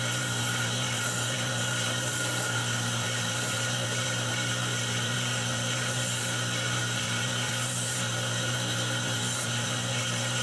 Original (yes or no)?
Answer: no